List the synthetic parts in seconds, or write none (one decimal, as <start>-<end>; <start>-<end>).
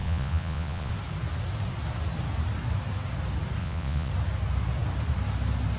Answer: 0.0-0.9; 3.6-4.1